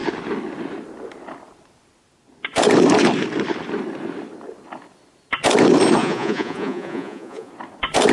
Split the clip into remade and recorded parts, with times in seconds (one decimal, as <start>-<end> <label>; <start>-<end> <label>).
0.0-6.0 recorded; 6.0-7.5 remade; 7.5-8.1 recorded